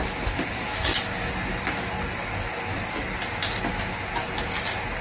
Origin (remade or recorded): recorded